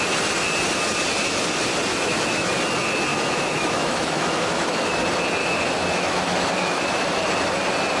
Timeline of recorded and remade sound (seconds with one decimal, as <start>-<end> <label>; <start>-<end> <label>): 0.0-1.9 recorded; 1.9-2.5 remade; 2.5-3.1 recorded; 3.1-5.0 remade; 5.0-5.4 recorded; 5.4-6.8 remade; 6.8-8.0 recorded